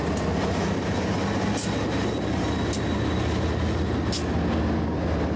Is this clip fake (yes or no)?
no